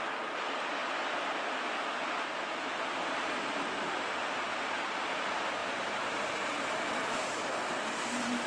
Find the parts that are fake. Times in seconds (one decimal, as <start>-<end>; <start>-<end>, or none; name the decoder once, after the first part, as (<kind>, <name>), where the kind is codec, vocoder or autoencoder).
5.6-8.5 (vocoder, BigVGAN v2)